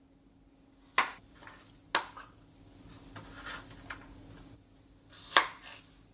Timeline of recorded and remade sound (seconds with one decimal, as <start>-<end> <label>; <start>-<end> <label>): 0.0-6.1 recorded